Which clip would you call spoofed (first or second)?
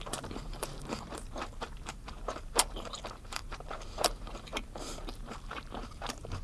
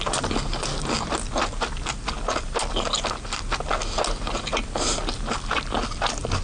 first